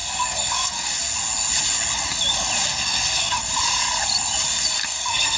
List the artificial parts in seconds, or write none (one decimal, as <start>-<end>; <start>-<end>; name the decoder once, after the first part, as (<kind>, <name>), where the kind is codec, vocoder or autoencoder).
0.0-0.9 (codec, SNAC); 2.7-3.4; 4.8-5.4